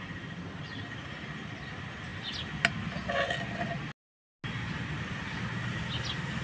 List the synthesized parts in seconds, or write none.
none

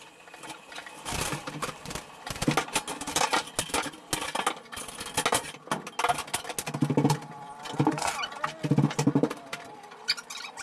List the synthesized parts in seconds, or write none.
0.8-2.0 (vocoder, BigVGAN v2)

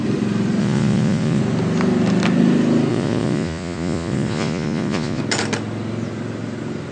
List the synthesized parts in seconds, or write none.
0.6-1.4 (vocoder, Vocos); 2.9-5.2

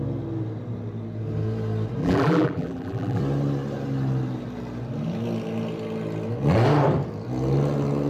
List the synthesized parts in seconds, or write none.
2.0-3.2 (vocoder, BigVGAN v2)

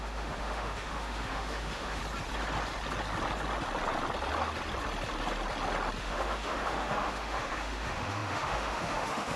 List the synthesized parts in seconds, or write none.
0.0-2.0 (autoencoder, DAC-VAE); 6.0-9.4